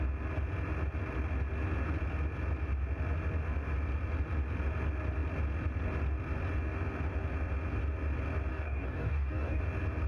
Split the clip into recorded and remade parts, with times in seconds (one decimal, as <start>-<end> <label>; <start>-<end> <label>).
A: 0.0-8.5 recorded; 8.5-9.6 remade; 9.6-10.1 recorded